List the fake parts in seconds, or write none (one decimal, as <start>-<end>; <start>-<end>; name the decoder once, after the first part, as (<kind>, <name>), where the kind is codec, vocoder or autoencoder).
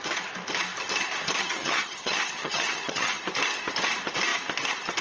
1.4-3.2 (vocoder, HiFi-GAN)